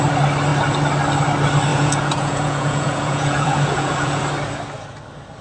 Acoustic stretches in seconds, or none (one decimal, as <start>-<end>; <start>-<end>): 0.0-1.7; 4.2-5.4